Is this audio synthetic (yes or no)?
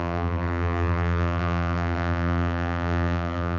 yes